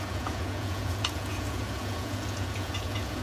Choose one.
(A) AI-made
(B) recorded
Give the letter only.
A